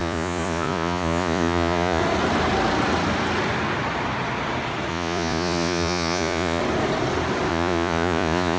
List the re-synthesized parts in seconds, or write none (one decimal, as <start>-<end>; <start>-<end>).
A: 0.0-2.0; 4.9-6.6; 7.5-8.6